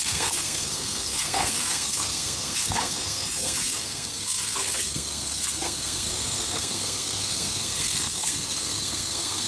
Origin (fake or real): fake